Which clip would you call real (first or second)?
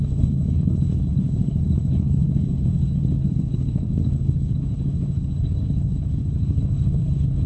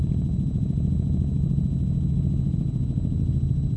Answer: second